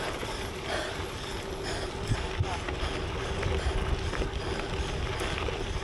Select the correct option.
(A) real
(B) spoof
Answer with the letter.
A